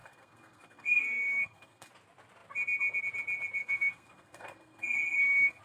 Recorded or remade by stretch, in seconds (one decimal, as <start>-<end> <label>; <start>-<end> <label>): 0.0-1.9 remade; 1.9-3.6 recorded; 3.6-5.6 remade